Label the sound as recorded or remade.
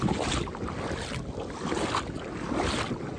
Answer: recorded